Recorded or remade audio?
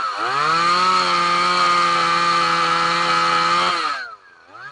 recorded